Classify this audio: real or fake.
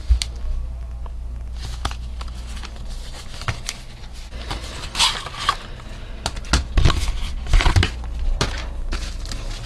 real